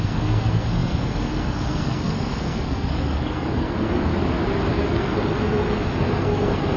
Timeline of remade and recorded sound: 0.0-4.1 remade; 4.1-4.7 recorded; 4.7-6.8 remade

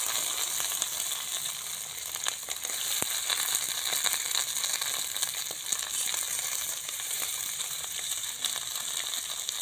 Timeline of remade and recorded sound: 0.0-6.3 recorded; 6.3-8.3 remade; 8.3-9.6 recorded